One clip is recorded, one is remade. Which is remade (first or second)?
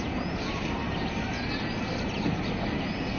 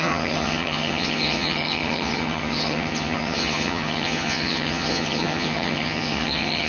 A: second